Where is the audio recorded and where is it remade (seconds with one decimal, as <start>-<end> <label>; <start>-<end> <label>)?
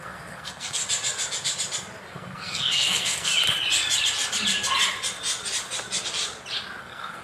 0.0-0.8 remade; 0.8-2.1 recorded; 2.1-3.3 remade; 3.3-6.8 recorded; 6.8-7.2 remade